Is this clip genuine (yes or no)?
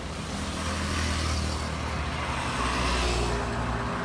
yes